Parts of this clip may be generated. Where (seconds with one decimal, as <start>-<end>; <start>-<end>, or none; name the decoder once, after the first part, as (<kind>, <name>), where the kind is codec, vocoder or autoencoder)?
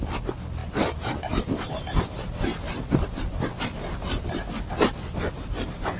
none